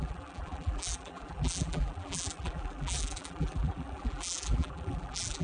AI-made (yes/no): yes